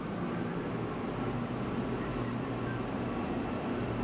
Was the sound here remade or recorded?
recorded